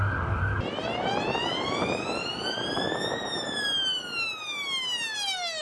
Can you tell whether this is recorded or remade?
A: recorded